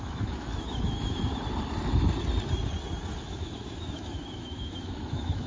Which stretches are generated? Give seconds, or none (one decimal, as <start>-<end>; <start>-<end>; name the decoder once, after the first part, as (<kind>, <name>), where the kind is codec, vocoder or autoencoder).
0.0-1.3 (autoencoder, DAC-VAE); 3.2-5.5